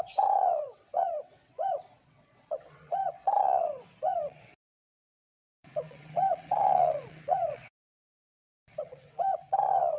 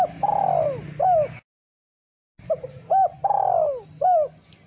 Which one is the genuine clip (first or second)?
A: second